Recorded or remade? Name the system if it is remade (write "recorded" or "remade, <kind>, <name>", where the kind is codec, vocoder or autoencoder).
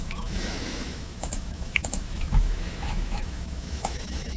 remade, autoencoder, DAC-VAE